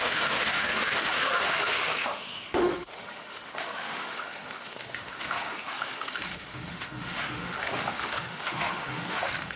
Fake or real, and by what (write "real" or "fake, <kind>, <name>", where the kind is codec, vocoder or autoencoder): fake, autoencoder, DAC-VAE